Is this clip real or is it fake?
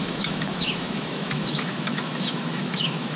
fake